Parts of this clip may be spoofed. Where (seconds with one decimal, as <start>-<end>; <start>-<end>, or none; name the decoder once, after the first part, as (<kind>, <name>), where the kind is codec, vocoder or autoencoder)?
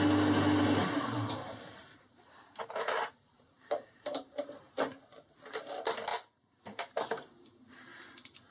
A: 0.8-4.4 (vocoder, BigVGAN v2); 6.1-7.0